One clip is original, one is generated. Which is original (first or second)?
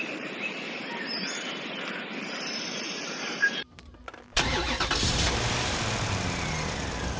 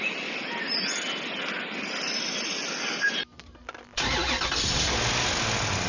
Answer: second